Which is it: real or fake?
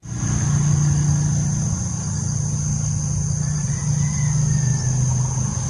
real